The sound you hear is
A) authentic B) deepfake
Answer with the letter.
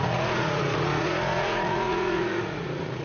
B